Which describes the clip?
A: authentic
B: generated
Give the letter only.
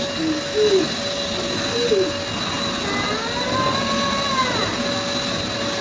A